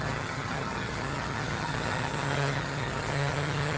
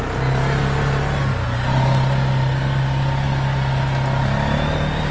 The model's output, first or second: first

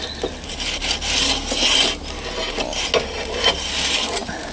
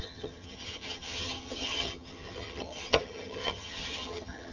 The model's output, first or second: second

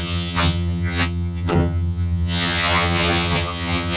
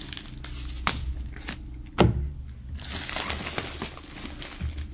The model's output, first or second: first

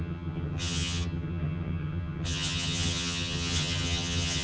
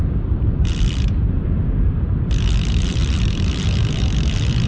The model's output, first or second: first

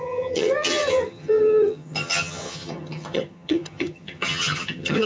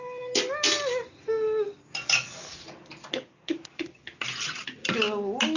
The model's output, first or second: first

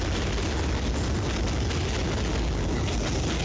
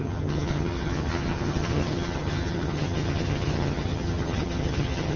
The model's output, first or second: second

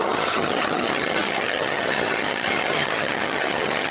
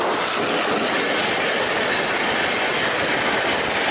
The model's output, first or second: first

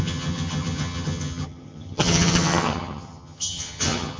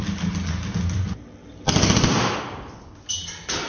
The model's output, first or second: first